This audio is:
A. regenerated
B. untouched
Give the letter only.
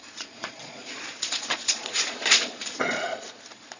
A